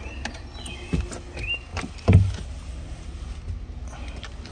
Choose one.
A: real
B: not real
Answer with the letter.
A